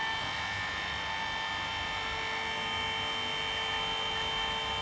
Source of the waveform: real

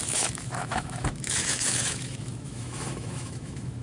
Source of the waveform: fake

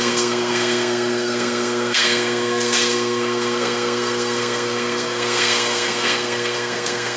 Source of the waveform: fake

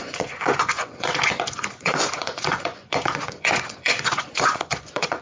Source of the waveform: fake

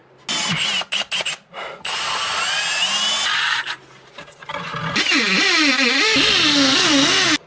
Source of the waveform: real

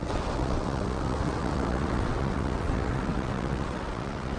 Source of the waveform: fake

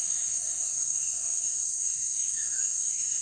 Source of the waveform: fake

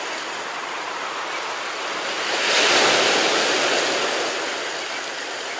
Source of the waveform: real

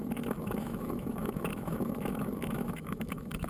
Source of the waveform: fake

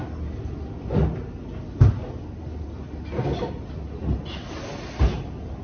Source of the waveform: real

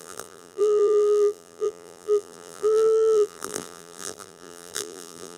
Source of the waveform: fake